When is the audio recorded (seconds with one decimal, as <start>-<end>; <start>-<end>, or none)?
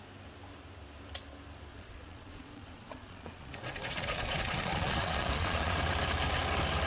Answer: 0.0-1.7; 5.8-6.9